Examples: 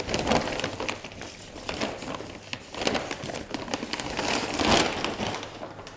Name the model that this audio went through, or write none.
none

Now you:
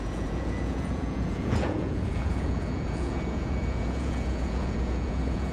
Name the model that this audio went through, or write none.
vocoder, Vocos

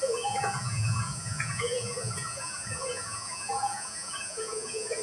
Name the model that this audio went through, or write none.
vocoder, Vocos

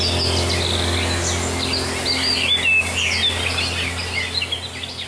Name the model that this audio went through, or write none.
none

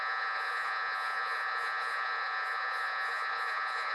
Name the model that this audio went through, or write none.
vocoder, Vocos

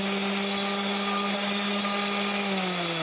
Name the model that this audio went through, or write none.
none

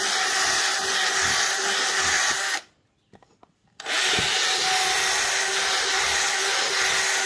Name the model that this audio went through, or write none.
none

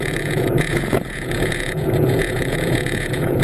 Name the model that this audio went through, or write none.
vocoder, Vocos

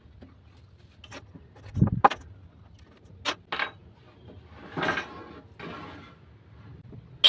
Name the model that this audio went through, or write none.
none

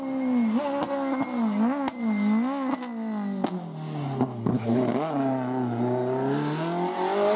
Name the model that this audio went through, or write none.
none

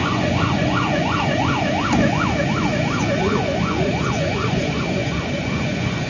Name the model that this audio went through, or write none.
vocoder, Vocos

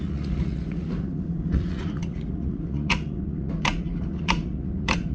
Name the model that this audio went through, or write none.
vocoder, Vocos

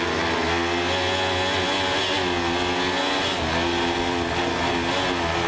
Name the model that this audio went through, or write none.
none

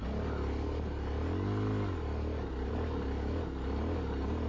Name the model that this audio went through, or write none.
none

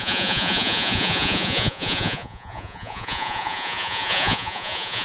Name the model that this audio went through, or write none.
vocoder, Vocos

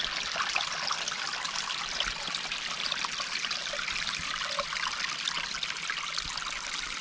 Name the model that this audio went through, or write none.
none